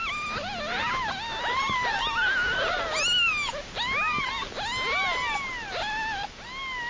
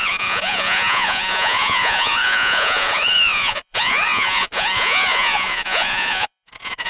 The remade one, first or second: second